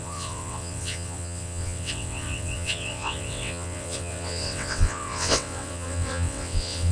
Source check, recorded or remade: remade